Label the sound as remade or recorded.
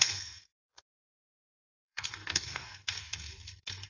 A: remade